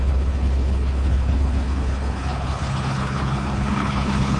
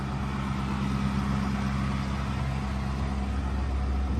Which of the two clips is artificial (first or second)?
first